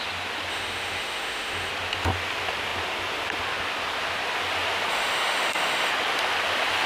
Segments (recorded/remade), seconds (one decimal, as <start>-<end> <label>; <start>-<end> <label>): 0.0-0.5 recorded; 0.5-1.7 remade; 1.7-4.9 recorded; 4.9-5.9 remade; 5.9-6.9 recorded